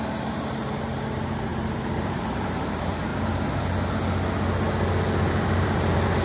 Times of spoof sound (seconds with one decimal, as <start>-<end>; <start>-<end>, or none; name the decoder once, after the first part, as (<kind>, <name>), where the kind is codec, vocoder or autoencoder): 0.0-3.1 (vocoder, BigVGAN v2); 5.3-6.2